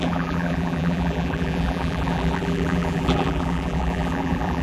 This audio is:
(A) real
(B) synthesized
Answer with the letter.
B